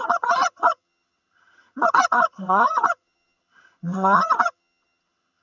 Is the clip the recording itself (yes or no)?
no